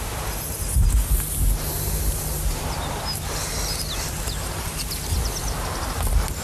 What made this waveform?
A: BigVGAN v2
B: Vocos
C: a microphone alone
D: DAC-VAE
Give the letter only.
C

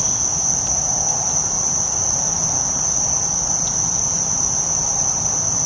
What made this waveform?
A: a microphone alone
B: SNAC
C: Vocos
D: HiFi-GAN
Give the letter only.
A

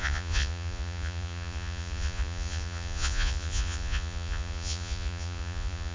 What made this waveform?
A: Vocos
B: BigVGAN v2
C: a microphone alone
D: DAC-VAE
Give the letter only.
A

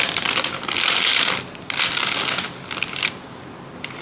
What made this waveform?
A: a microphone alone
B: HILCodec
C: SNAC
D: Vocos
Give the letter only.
A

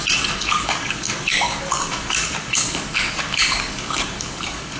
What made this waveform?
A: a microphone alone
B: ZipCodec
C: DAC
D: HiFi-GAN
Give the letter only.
C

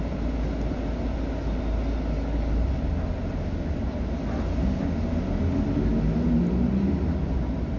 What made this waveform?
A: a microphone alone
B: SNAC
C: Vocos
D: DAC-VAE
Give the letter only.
A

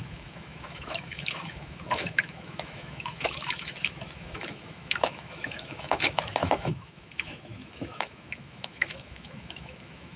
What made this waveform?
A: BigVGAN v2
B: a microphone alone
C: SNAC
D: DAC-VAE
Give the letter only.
D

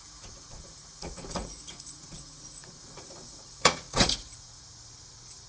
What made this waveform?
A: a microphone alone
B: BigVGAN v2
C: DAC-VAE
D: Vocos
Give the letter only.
D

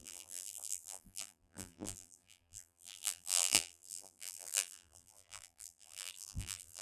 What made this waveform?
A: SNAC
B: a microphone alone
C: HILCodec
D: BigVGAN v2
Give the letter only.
D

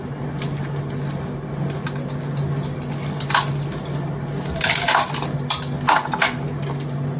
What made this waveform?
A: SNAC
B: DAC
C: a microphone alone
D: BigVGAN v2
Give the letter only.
C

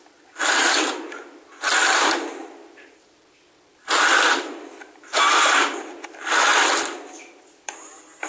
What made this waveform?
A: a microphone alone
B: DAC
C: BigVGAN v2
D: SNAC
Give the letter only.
C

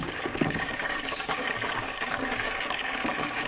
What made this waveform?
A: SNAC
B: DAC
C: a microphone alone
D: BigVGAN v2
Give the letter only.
B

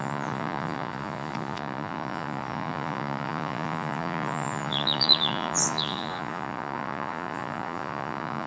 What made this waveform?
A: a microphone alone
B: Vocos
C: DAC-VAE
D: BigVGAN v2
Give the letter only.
B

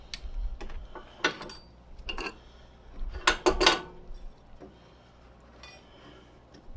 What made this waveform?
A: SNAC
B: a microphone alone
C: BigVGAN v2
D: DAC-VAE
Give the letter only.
B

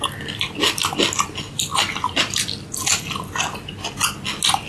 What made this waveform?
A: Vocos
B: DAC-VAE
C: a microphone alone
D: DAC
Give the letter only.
C